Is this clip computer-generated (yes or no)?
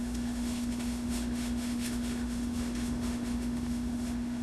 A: yes